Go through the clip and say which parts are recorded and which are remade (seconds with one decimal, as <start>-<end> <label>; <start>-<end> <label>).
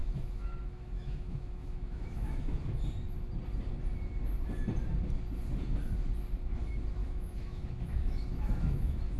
0.0-2.6 remade; 2.6-7.0 recorded; 7.0-9.2 remade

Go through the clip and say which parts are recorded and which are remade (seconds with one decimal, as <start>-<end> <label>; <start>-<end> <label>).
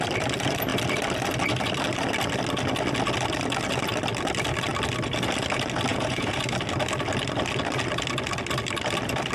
0.0-5.9 recorded; 5.9-6.4 remade; 6.4-9.3 recorded